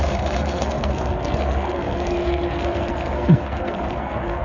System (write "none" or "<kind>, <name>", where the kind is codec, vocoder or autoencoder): codec, SNAC